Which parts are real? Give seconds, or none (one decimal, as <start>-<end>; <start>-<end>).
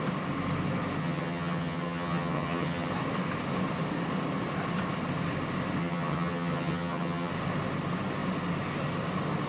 0.0-1.0; 2.9-5.8; 7.3-9.5